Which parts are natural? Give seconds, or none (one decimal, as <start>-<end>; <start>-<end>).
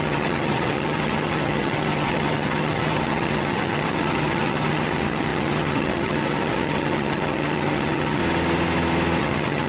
8.2-9.2